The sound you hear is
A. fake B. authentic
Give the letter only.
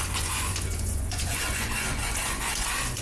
A